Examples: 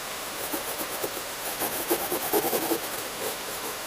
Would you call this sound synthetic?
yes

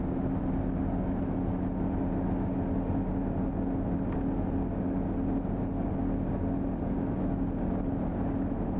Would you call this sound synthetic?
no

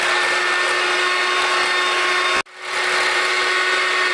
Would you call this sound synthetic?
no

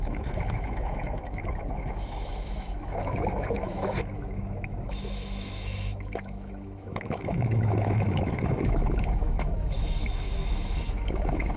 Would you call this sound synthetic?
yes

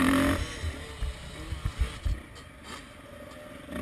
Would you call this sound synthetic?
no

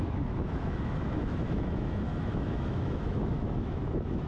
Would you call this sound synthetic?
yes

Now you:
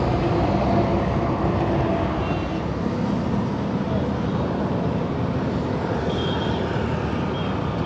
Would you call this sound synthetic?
no